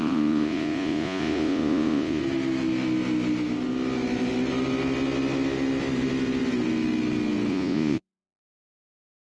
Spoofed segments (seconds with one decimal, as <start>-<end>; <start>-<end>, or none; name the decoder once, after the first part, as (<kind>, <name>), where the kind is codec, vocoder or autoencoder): 0.0-2.2 (vocoder, Vocos); 7.5-9.4